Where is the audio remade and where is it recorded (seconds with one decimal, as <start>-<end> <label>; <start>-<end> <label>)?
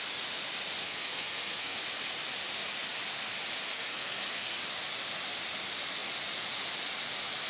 0.0-0.8 recorded; 0.8-1.8 remade; 1.8-3.7 recorded; 3.7-4.6 remade; 4.6-7.5 recorded